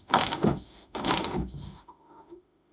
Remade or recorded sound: remade